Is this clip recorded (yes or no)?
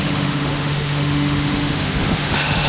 no